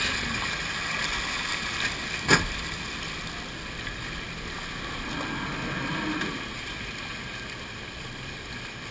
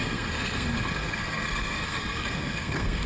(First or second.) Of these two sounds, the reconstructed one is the second